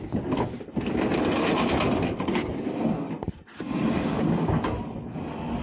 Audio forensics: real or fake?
real